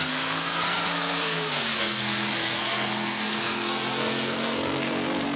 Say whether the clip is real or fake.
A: fake